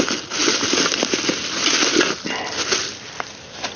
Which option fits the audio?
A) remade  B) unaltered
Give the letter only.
B